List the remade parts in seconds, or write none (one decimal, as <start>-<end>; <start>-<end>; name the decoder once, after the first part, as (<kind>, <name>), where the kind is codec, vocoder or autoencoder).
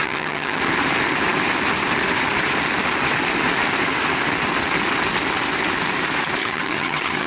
0.0-0.6 (vocoder, HiFi-GAN); 6.4-7.3